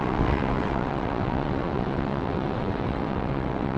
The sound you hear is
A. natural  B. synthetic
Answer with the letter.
B